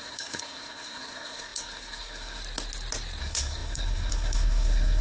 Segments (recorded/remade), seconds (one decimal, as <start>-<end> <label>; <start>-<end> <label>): 0.0-2.4 remade; 2.4-3.2 recorded; 3.2-5.0 remade